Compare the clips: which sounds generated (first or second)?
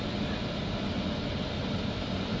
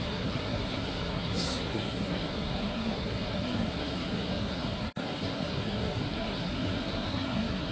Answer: second